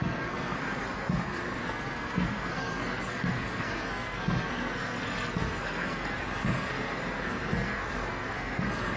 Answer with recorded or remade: remade